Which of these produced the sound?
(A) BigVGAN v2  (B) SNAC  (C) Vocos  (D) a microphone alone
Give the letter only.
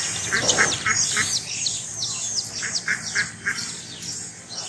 D